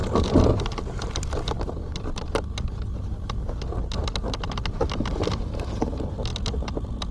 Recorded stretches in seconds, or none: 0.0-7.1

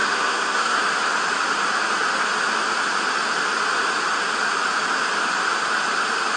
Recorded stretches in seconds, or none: 0.8-6.4